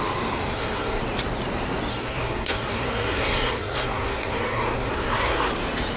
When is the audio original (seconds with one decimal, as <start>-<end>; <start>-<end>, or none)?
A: 0.0-0.5; 1.0-1.9; 5.5-6.0